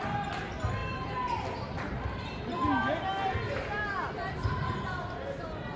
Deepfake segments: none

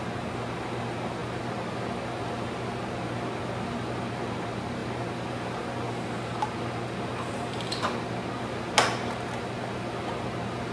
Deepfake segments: none

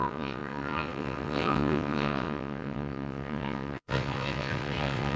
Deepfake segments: 0.0-5.2